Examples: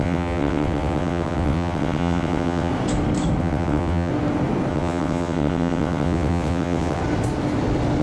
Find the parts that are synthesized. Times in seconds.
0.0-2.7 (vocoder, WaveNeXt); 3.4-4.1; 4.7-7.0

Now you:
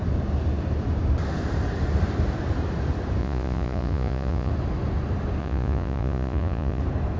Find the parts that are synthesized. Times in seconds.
3.2-4.5 (vocoder, Vocos); 5.4-6.8

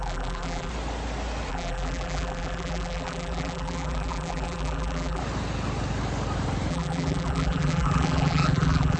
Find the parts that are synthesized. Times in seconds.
0.0-0.7 (vocoder, BigVGAN v2); 1.5-5.2; 6.7-9.0

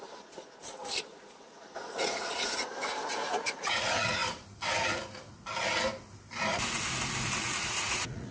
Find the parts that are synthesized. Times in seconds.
0.0-4.2 (vocoder, Vocos); 7.4-8.3

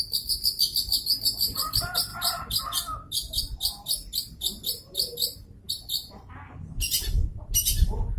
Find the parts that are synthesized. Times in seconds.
none

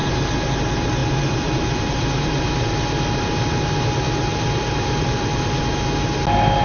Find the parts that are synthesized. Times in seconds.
1.0-2.7 (vocoder, BigVGAN v2); 4.3-5.5